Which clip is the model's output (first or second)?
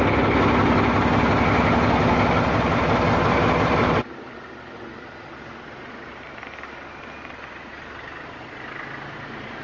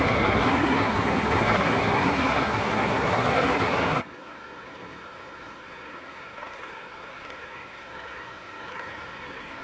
second